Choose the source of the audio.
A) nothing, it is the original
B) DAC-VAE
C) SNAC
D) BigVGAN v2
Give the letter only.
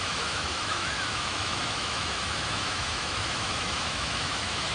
B